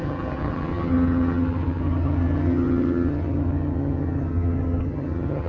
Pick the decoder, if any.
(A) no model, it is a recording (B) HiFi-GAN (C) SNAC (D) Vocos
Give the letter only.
B